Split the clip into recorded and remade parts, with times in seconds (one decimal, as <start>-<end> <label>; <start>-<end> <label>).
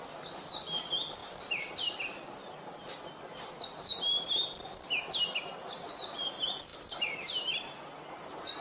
0.0-8.6 recorded